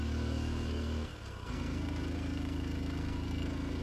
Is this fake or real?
fake